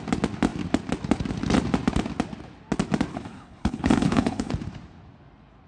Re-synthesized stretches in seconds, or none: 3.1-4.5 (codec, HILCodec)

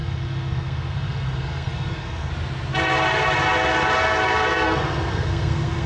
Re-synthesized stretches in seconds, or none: 0.0-2.3 (codec, SNAC); 4.5-5.9

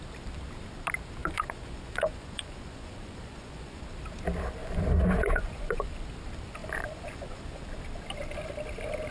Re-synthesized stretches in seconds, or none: 1.2-3.8 (vocoder, Vocos); 4.6-5.9; 6.6-7.6

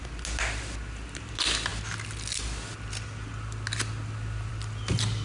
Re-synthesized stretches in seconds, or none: none

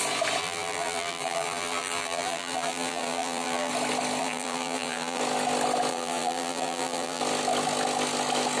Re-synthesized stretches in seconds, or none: 0.4-3.7 (vocoder, BigVGAN v2); 4.2-5.2; 5.9-7.2

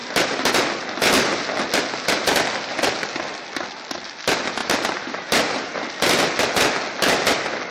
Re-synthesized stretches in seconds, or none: 0.0-0.5 (vocoder, BigVGAN v2); 4.6-5.7